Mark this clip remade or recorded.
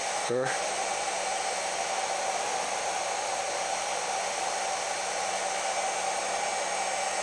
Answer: recorded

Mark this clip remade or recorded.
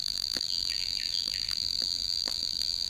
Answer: remade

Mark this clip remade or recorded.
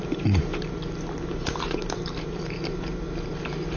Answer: remade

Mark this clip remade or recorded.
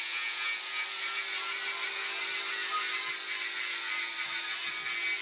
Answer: recorded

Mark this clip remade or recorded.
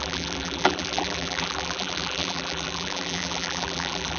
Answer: remade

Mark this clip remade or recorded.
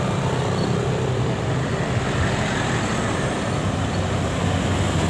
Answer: remade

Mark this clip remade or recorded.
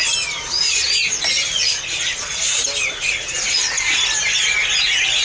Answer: recorded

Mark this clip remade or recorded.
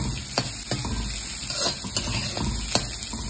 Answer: recorded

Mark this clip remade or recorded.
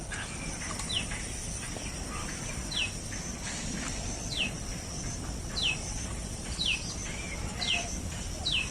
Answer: remade